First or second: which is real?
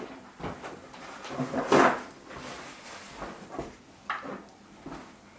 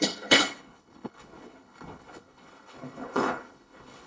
first